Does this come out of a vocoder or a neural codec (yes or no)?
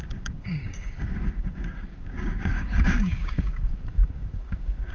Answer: yes